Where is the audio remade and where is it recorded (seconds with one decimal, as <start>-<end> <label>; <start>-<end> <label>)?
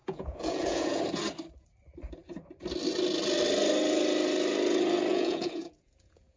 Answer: 0.0-1.0 remade; 1.0-5.1 recorded; 5.1-6.4 remade